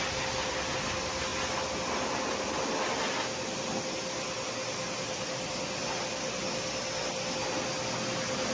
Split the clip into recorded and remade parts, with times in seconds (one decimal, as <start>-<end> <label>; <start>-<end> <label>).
0.0-8.5 recorded